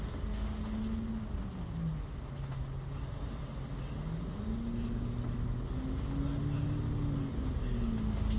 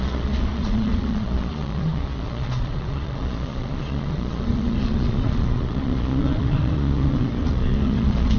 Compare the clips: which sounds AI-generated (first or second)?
second